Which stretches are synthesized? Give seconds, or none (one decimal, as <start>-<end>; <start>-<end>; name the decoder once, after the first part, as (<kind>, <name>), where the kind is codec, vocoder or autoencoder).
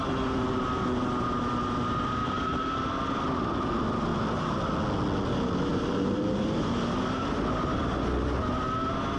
2.2-2.8 (vocoder, BigVGAN v2); 4.1-4.6; 5.7-7.2